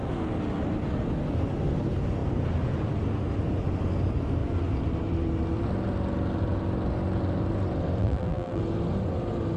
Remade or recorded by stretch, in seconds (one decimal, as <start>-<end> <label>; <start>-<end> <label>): 0.0-8.0 recorded; 8.0-8.6 remade; 8.6-9.6 recorded